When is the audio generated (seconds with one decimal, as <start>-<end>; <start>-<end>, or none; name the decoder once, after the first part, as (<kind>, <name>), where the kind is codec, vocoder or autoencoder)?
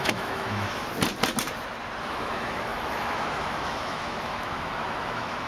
0.0-0.8 (autoencoder, DAC-VAE); 2.0-5.5